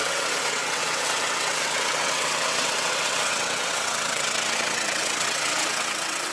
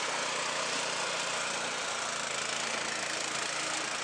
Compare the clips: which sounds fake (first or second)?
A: first